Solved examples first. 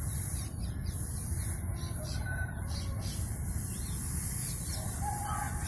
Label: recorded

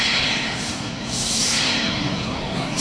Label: remade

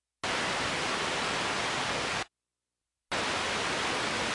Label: recorded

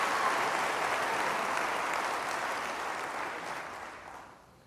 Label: recorded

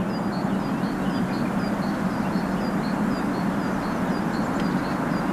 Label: recorded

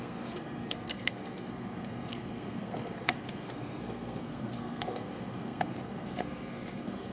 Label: remade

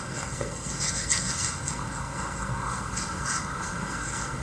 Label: remade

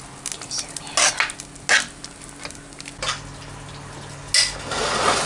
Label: recorded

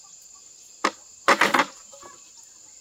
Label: recorded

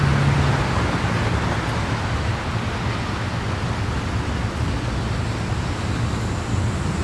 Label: recorded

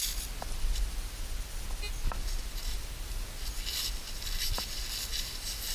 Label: recorded